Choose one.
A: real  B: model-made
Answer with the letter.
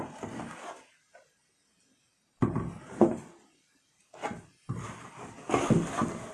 A